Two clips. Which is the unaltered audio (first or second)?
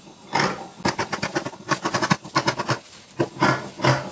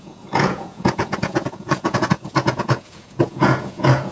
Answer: first